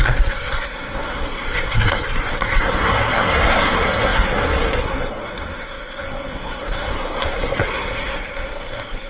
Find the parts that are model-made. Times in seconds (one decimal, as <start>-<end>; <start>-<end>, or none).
0.0-9.1